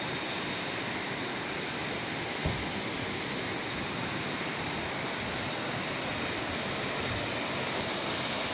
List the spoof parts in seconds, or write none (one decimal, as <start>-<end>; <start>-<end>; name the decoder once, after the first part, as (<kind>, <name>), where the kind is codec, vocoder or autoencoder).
none